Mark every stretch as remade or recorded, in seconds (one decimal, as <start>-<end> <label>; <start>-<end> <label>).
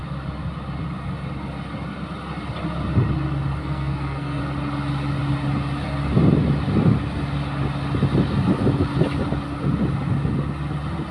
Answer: 0.0-3.6 recorded; 3.6-4.4 remade; 4.4-11.1 recorded